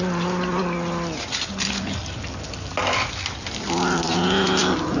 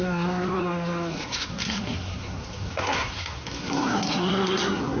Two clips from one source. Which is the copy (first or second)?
second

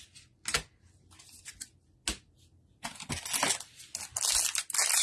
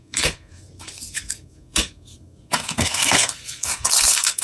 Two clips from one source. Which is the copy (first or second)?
second